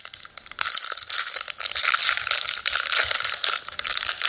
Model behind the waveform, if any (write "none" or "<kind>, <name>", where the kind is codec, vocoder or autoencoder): none